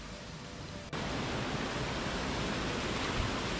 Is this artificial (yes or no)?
no